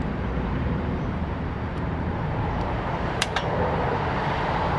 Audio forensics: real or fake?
fake